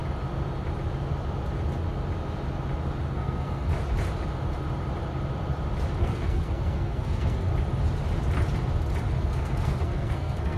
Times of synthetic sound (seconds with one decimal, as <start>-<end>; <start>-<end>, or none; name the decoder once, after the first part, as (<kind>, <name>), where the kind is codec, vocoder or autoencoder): 3.1-3.7 (codec, SNAC); 6.0-7.5; 9.1-10.6